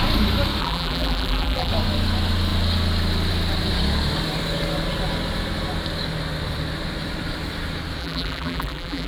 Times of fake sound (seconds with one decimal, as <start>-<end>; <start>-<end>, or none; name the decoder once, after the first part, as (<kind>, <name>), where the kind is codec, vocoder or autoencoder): 0.6-1.7 (vocoder, BigVGAN v2); 8.0-9.1